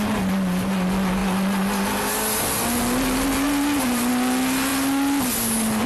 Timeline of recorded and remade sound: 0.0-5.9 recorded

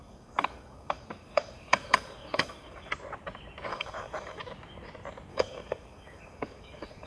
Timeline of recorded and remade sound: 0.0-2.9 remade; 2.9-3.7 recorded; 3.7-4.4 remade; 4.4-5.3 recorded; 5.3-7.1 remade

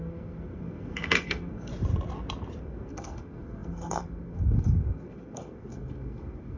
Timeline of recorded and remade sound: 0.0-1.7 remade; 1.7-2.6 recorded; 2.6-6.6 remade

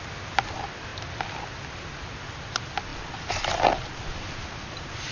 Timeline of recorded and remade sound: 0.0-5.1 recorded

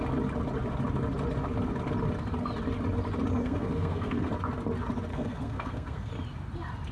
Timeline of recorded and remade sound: 0.0-3.4 recorded; 3.4-4.3 remade; 4.3-5.1 recorded; 5.1-6.1 remade; 6.1-6.9 recorded